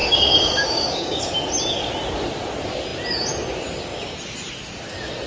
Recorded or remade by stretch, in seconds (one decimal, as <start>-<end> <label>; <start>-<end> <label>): 0.0-1.2 remade; 1.2-5.3 recorded